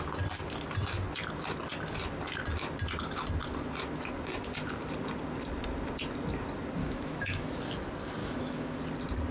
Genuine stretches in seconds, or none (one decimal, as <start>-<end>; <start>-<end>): 0.0-6.8; 7.6-8.2; 8.8-9.3